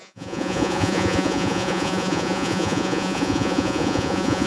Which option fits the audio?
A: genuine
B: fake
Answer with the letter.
B